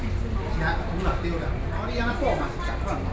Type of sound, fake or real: real